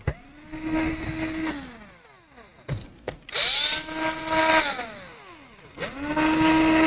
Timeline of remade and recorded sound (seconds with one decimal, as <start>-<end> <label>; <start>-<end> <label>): 0.0-6.9 recorded